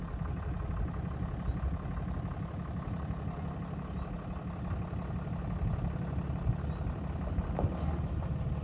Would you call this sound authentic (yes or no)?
yes